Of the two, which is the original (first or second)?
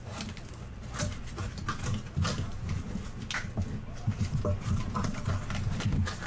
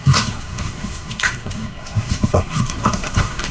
first